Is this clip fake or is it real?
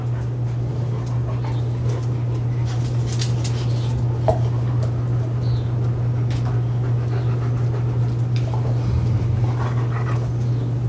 real